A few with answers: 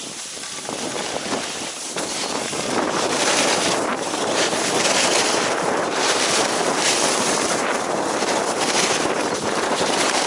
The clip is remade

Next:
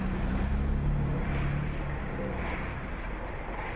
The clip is recorded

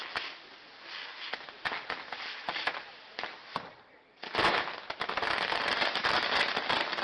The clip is recorded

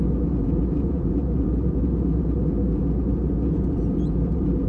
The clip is remade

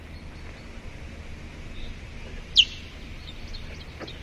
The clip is recorded